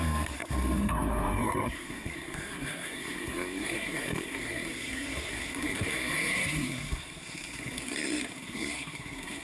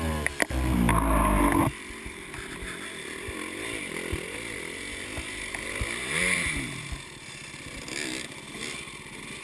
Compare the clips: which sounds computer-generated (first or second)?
first